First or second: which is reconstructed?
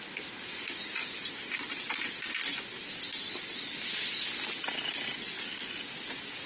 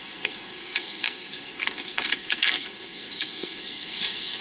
second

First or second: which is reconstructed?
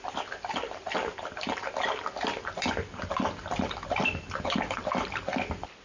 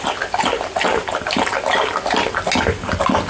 first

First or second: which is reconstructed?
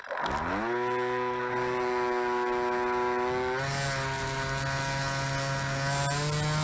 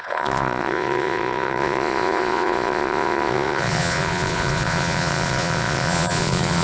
second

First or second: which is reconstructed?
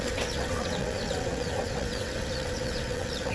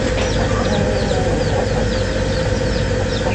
first